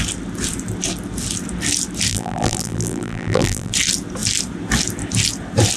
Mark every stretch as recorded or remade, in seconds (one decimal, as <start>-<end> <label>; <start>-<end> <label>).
0.0-2.1 recorded; 2.1-3.7 remade; 3.7-5.8 recorded